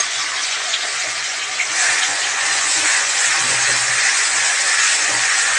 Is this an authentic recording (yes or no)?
no